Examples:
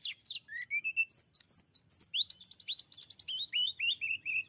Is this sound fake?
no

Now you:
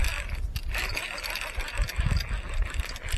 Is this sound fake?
no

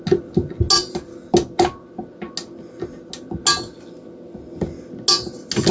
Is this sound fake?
no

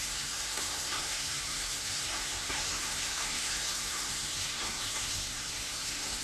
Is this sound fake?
yes